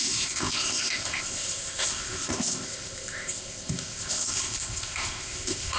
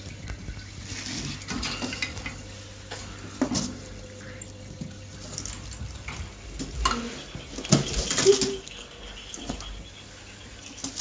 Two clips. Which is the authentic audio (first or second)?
second